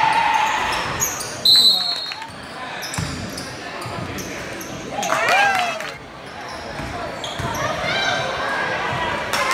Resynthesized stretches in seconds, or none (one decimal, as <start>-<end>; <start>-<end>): none

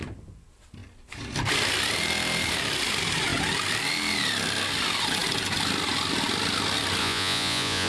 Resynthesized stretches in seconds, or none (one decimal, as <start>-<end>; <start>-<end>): 7.0-7.9

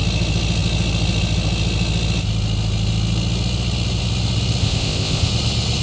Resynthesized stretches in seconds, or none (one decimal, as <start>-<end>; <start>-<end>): 4.6-5.3

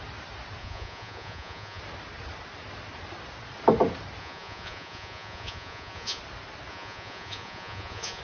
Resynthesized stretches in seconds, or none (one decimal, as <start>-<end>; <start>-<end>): 0.6-1.8; 4.2-6.2; 6.7-8.2

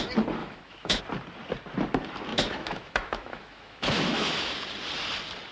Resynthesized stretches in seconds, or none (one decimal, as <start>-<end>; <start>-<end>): 0.4-1.0; 2.3-4.5

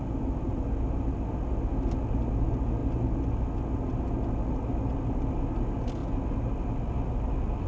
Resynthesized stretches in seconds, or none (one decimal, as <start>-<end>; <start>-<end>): none